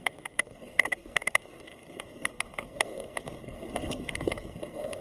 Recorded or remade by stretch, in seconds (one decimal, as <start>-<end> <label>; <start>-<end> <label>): 0.0-5.0 remade

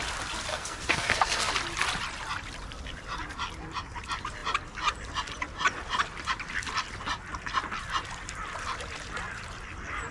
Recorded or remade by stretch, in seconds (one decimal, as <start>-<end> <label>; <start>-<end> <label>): 0.0-0.5 recorded; 0.5-1.5 remade; 1.5-10.1 recorded

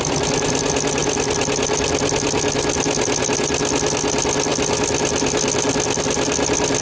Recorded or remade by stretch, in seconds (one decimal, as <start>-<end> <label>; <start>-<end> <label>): 0.0-6.8 recorded

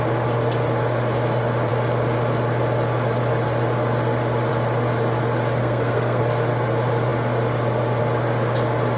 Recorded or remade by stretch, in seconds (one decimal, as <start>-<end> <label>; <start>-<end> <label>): 0.0-5.6 recorded; 5.6-6.2 remade; 6.2-9.0 recorded

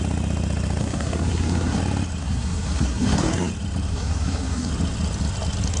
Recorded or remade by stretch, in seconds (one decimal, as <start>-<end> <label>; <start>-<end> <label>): 0.0-0.8 recorded; 0.8-1.8 remade; 1.8-2.2 recorded; 2.2-3.5 remade; 3.5-3.9 recorded; 3.9-4.7 remade; 4.7-5.8 recorded